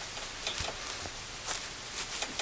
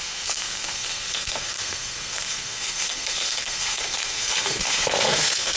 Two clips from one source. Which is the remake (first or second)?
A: second